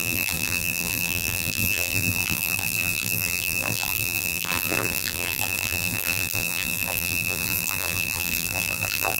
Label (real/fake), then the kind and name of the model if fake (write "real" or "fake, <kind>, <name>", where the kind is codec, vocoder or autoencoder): fake, vocoder, BigVGAN v2